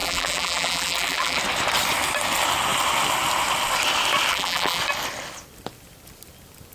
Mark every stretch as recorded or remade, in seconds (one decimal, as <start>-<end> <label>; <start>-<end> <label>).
0.0-1.4 remade; 1.4-4.3 recorded; 4.3-4.8 remade; 4.8-6.7 recorded